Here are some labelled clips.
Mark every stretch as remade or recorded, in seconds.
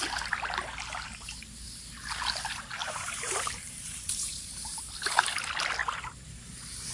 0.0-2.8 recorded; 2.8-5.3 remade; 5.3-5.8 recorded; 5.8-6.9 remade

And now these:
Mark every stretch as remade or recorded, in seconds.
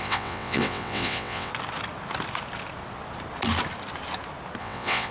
0.0-1.5 remade; 1.5-4.6 recorded; 4.6-5.1 remade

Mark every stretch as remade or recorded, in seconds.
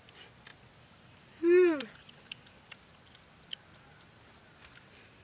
0.0-5.2 recorded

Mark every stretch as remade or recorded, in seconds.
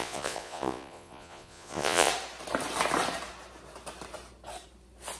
0.0-2.1 remade; 2.1-5.2 recorded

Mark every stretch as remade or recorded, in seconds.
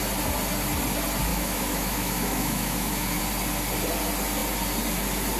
0.0-1.3 recorded; 1.3-3.2 remade; 3.2-5.4 recorded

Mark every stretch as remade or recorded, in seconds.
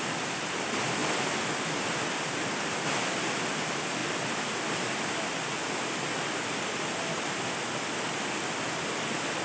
0.0-9.4 recorded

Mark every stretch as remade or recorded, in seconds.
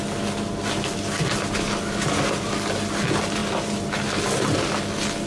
0.0-5.3 recorded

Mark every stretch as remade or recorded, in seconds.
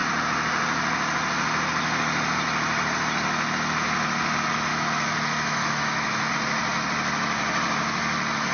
0.0-4.7 recorded; 4.7-6.3 remade; 6.3-8.5 recorded